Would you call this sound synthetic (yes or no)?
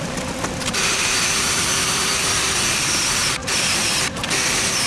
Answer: yes